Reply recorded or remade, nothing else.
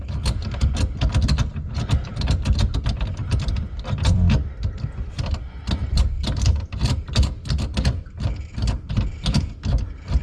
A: recorded